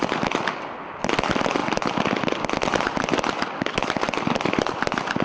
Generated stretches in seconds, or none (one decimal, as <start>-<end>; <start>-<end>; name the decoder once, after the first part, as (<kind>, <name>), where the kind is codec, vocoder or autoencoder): none